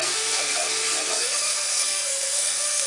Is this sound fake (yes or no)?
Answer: yes